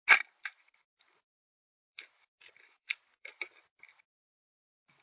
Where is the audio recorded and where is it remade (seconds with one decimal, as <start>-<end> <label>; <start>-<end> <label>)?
0.0-0.4 recorded; 0.4-3.4 remade; 3.4-5.0 recorded